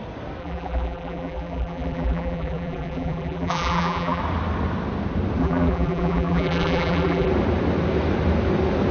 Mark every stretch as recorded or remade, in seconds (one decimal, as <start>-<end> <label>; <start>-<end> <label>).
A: 0.0-0.4 recorded; 0.4-4.2 remade; 4.2-5.4 recorded; 5.4-7.3 remade; 7.3-8.9 recorded